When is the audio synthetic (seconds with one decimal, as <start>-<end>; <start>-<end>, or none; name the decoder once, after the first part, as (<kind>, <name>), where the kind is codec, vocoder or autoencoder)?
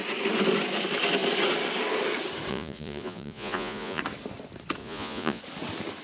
2.5-4.0 (vocoder, Vocos); 4.8-5.4